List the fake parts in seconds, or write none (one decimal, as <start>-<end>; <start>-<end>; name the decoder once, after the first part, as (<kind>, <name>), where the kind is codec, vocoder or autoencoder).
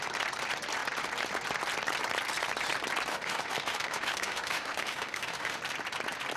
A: 3.1-5.6 (autoencoder, DAC-VAE)